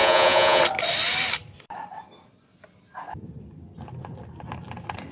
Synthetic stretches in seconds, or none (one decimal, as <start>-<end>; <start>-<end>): 0.0-0.6